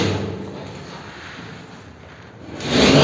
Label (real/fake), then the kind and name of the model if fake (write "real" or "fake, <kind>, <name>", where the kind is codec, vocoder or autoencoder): real